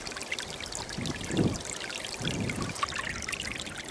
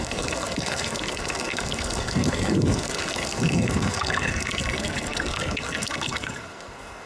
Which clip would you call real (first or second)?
first